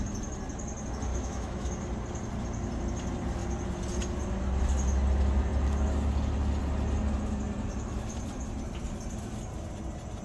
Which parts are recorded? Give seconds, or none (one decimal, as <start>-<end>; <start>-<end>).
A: 0.0-1.1; 1.7-10.2